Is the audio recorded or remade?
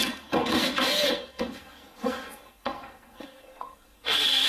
remade